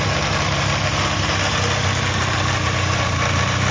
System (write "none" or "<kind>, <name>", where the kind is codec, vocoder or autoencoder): none